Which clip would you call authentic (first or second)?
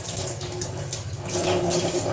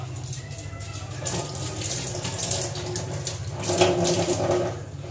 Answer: second